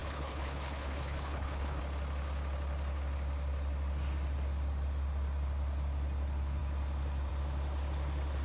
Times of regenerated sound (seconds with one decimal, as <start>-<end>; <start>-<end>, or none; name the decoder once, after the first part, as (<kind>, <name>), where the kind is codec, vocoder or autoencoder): 0.0-1.8 (codec, HILCodec)